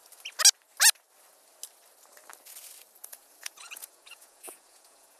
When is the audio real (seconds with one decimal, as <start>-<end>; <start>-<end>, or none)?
0.0-3.1